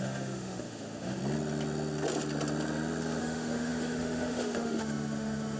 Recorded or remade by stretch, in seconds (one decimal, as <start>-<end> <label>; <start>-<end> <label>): 0.0-1.2 remade; 1.2-3.2 recorded; 3.2-5.6 remade